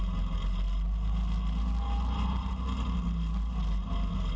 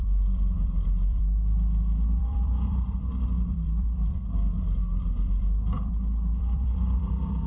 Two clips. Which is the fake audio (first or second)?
second